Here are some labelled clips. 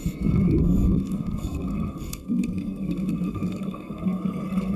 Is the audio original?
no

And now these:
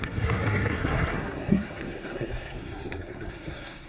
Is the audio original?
no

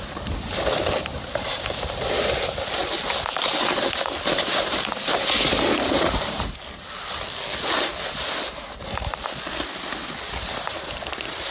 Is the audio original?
yes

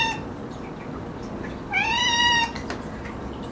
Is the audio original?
yes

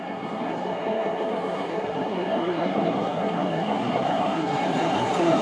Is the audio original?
no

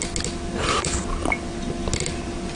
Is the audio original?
yes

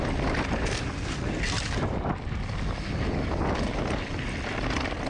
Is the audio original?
yes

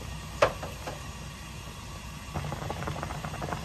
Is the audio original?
yes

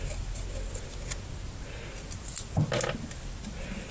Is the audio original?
yes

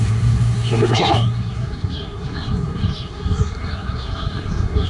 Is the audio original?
no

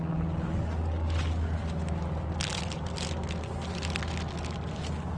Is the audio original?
yes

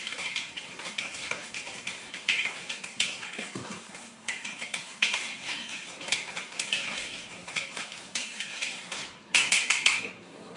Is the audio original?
no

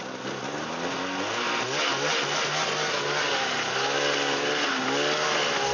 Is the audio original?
yes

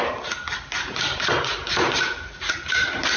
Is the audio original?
yes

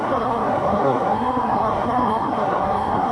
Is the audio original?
no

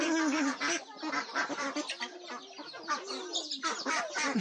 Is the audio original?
yes